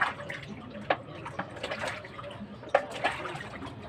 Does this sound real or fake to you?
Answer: real